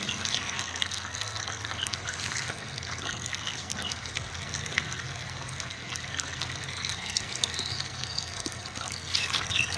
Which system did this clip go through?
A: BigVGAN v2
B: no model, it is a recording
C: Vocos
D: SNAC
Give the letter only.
D